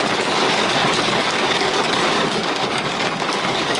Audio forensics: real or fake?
fake